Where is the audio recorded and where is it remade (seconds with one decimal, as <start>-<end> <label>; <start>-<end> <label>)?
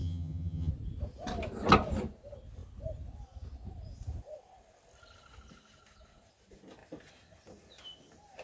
0.0-0.7 remade; 0.7-8.4 recorded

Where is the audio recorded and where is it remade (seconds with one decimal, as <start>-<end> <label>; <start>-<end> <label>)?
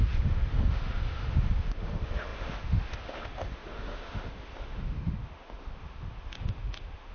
0.0-7.1 remade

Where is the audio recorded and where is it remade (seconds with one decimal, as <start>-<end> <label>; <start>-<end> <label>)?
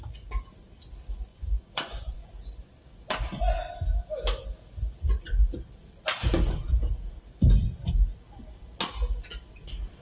0.0-1.3 recorded; 1.3-2.3 remade; 2.3-10.0 recorded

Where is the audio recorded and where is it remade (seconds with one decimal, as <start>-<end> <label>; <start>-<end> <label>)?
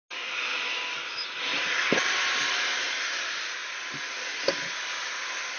0.0-1.5 recorded; 1.5-2.9 remade; 2.9-3.6 recorded; 3.6-5.6 remade